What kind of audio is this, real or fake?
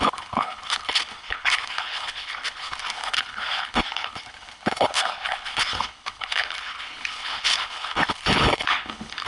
fake